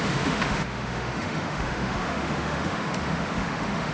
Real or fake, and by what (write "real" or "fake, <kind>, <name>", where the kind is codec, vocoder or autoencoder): fake, autoencoder, DAC-VAE